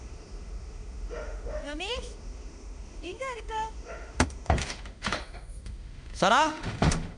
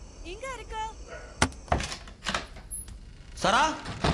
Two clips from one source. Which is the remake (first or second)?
first